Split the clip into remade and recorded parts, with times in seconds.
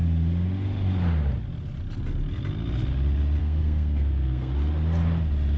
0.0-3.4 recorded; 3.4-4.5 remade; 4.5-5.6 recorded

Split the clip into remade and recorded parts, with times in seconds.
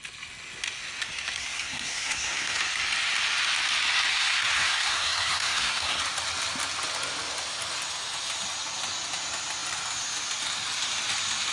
0.0-1.4 recorded; 1.4-2.6 remade; 2.6-4.1 recorded; 4.1-6.0 remade; 6.0-11.5 recorded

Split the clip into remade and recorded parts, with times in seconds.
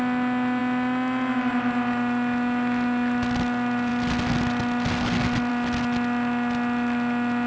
0.0-7.5 recorded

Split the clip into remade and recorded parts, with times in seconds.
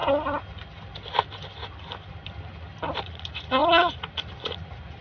0.0-3.0 recorded; 3.0-5.0 remade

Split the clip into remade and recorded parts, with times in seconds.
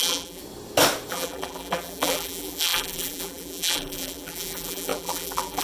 0.0-0.4 remade; 0.4-1.1 recorded; 1.1-5.6 remade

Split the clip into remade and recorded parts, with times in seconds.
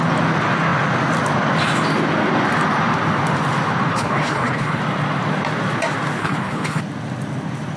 0.0-3.9 recorded; 3.9-4.8 remade; 4.8-6.2 recorded; 6.2-6.8 remade; 6.8-7.8 recorded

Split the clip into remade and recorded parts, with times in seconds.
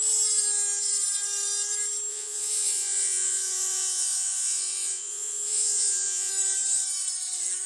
0.0-2.1 recorded; 2.1-6.3 remade; 6.3-7.7 recorded